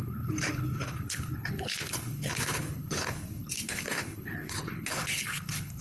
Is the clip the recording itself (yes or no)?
no